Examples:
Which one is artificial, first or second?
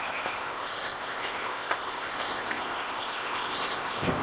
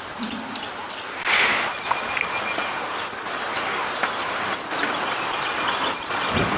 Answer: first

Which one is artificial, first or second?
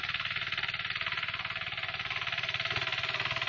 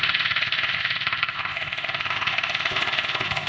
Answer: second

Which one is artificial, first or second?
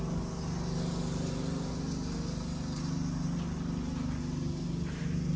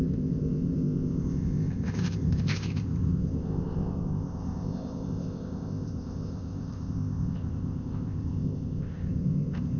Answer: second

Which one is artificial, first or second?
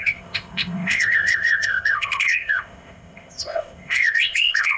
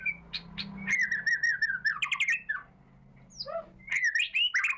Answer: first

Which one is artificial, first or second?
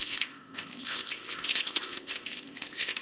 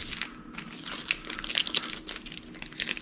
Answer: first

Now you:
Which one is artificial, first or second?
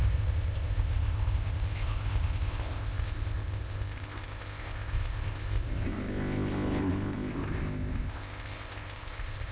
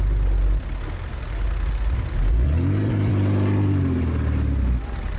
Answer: first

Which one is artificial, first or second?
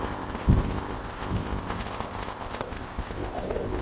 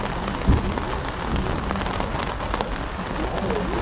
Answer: first